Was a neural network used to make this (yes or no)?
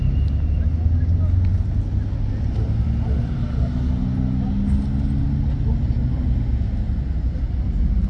no